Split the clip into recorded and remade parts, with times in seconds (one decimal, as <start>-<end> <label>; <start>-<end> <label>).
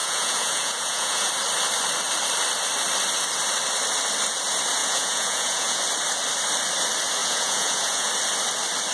0.0-1.3 remade; 1.3-4.8 recorded; 4.8-5.8 remade; 5.8-7.2 recorded; 7.2-8.1 remade; 8.1-8.9 recorded